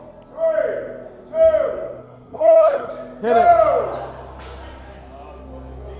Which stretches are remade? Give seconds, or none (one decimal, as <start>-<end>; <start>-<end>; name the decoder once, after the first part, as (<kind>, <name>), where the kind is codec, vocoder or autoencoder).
2.0-2.9 (codec, SNAC)